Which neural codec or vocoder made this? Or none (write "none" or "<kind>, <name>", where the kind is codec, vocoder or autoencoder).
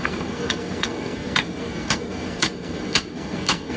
codec, SNAC